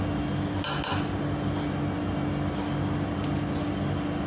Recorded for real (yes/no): yes